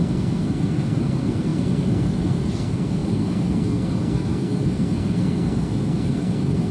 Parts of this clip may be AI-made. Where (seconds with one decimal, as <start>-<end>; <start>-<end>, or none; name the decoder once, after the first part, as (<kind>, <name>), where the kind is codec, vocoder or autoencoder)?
0.0-6.7 (codec, SNAC)